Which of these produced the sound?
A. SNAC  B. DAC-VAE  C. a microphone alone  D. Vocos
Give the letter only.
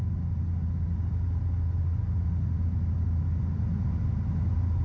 C